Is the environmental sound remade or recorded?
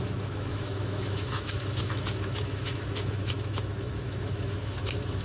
remade